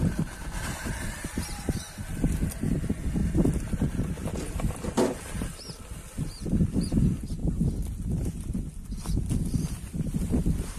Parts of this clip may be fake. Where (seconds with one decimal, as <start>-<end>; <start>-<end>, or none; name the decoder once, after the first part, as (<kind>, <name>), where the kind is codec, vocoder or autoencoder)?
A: none